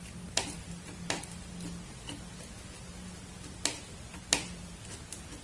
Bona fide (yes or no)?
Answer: yes